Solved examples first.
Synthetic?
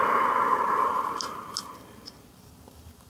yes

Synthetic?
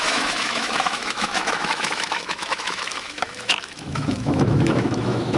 yes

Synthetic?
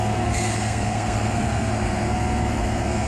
yes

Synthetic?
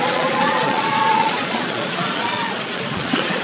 yes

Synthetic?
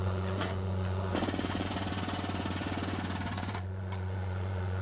yes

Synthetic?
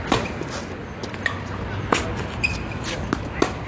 no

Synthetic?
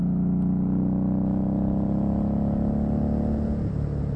no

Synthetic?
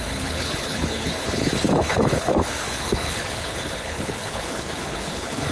yes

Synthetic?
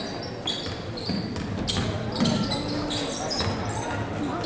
no